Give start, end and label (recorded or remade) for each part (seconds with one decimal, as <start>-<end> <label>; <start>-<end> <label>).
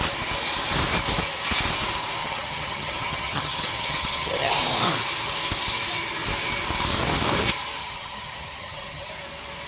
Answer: 0.0-2.2 recorded; 2.2-4.5 remade; 4.5-7.8 recorded; 7.8-9.1 remade; 9.1-9.7 recorded